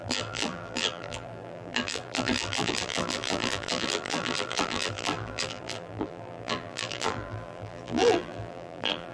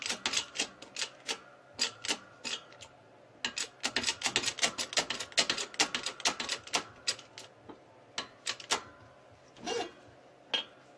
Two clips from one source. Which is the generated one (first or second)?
first